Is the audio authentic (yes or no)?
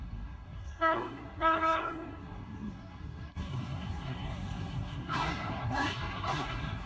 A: no